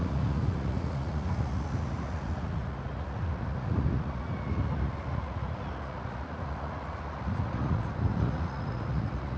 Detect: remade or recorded remade